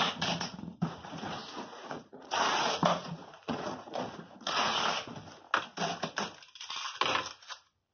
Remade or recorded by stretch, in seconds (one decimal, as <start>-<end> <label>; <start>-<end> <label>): 0.0-4.7 remade; 4.7-7.9 recorded